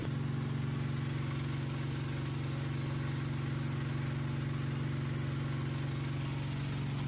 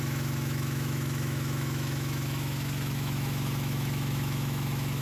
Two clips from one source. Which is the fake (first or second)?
second